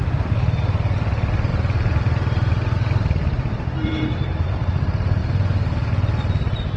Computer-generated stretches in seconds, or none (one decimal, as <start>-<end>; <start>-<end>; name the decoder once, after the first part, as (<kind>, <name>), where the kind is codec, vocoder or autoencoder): 1.5-4.5 (vocoder, BigVGAN v2)

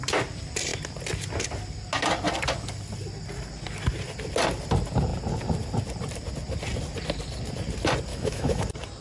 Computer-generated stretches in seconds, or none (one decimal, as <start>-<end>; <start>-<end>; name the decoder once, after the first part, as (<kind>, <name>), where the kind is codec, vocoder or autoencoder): 8.1-8.6 (autoencoder, DAC-VAE)

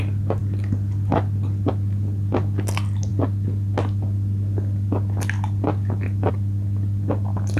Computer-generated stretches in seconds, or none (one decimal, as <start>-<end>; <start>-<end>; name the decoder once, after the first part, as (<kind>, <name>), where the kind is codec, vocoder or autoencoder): none

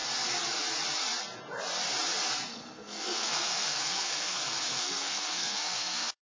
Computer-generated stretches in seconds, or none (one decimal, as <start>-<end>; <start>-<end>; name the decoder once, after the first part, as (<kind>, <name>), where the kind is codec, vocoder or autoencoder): 2.5-6.2 (codec, SNAC)

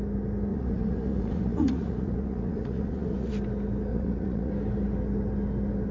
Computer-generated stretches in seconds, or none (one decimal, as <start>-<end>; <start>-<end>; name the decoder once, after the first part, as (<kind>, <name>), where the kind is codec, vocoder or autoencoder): 0.5-3.3 (vocoder, Vocos); 3.9-4.5